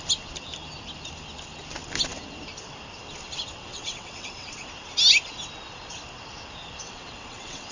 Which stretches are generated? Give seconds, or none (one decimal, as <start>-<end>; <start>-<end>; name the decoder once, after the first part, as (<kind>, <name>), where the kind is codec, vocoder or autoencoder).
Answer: 3.6-4.7 (vocoder, WaveNeXt); 6.8-7.7